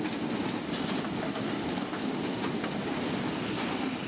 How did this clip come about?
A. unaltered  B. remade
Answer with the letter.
A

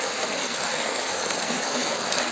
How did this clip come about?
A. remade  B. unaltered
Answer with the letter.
A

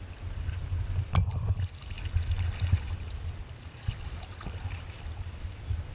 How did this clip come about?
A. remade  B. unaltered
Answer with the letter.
B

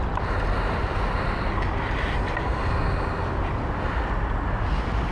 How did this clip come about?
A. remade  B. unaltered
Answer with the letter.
B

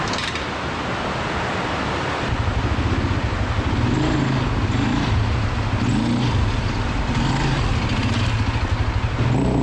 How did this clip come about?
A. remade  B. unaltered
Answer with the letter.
B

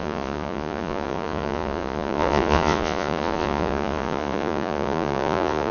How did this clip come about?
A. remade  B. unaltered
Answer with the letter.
A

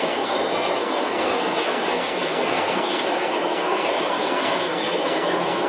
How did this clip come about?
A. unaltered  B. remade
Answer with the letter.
B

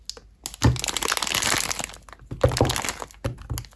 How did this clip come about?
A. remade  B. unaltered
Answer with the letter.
B